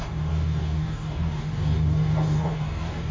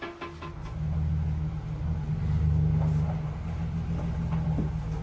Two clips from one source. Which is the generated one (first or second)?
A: first